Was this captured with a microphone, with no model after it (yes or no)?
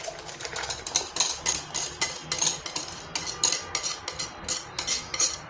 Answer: yes